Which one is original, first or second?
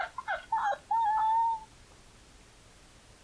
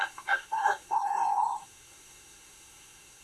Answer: first